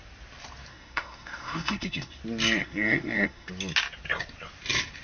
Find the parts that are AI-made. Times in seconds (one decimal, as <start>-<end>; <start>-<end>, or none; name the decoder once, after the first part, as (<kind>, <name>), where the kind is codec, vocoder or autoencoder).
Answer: 0.7-2.2 (codec, SNAC); 2.6-3.5